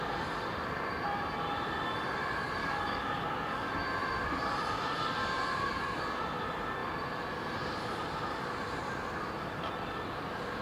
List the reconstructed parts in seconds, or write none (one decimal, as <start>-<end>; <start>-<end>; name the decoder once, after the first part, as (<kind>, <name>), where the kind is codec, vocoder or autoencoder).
2.6-3.7 (codec, DAC); 5.5-6.2